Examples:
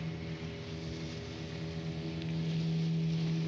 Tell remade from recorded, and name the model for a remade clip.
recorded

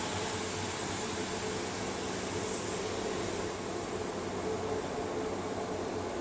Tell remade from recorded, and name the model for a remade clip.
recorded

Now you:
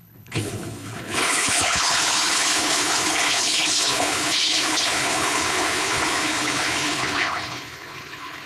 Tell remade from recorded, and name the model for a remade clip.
remade, codec, HILCodec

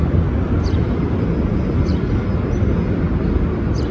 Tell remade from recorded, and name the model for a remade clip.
recorded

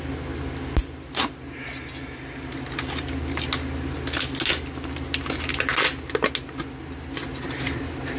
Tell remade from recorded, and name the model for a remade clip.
recorded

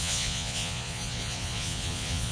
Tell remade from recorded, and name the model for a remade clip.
remade, vocoder, Vocos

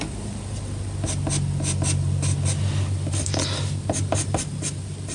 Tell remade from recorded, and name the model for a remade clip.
recorded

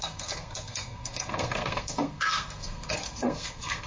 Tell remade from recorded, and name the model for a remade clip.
remade, codec, SNAC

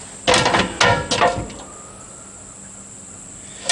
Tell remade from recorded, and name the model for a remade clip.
recorded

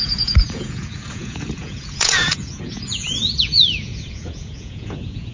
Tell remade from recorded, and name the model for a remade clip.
remade, vocoder, Vocos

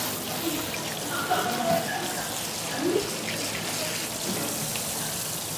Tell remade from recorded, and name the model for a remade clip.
recorded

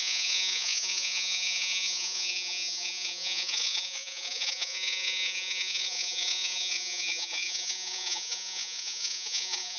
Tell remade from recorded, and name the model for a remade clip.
remade, vocoder, Vocos